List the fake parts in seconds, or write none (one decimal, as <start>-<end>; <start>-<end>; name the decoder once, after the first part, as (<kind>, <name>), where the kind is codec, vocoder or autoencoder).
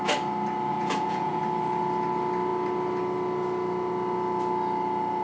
0.7-1.4 (vocoder, Vocos)